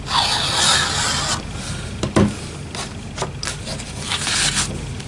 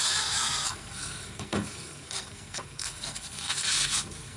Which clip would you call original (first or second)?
first